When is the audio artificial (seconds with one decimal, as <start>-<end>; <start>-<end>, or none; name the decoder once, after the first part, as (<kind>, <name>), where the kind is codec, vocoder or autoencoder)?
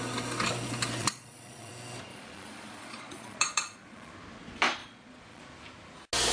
1.0-1.7 (vocoder, Vocos); 2.1-4.1; 4.8-5.4